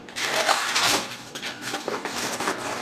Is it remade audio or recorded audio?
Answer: remade